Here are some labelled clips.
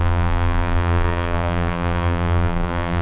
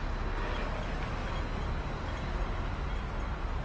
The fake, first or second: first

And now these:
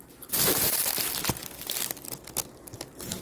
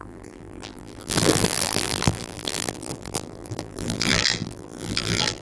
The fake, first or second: second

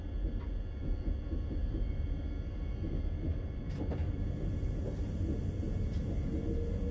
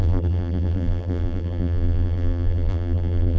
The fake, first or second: second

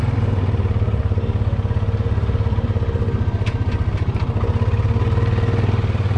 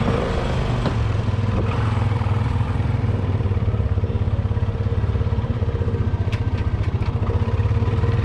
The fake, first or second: second